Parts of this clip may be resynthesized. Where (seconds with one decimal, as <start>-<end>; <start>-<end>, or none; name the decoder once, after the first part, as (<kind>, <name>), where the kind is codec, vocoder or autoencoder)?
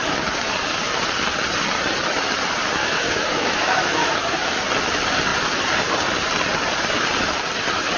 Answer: 2.8-4.6 (autoencoder, DAC-VAE)